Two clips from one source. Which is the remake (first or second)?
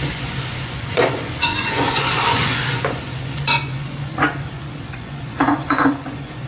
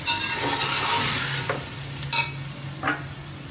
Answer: first